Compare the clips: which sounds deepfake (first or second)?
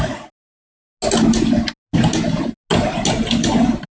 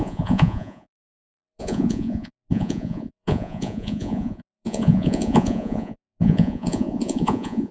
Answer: second